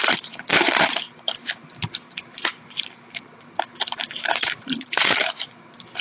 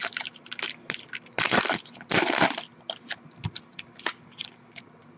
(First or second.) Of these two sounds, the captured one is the second